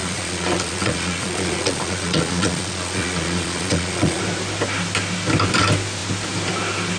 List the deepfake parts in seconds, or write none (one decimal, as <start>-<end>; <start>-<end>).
0.0-4.2